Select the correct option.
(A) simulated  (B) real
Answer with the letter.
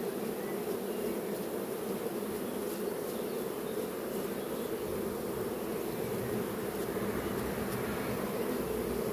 B